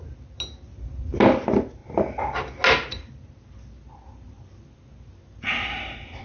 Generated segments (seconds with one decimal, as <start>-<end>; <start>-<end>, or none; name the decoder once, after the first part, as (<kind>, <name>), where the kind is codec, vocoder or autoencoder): none